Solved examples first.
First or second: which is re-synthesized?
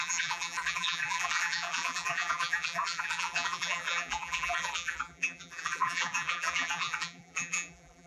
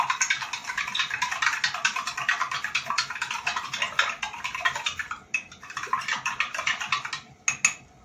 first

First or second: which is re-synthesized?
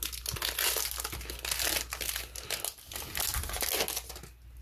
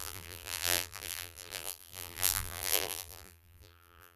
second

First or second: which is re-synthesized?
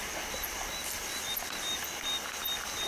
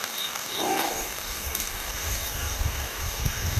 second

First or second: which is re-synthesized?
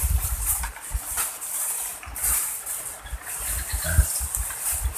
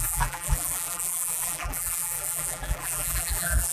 second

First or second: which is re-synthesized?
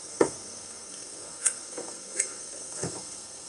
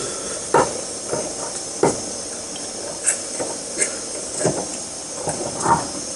first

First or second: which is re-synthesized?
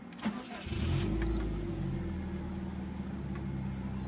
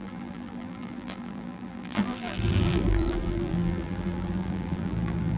second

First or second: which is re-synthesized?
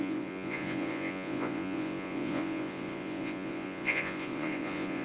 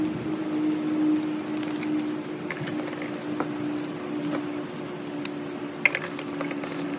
first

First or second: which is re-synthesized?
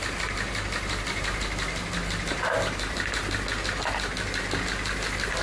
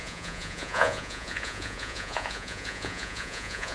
second